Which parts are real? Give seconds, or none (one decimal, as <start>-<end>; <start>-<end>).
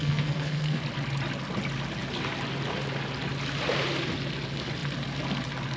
0.8-5.8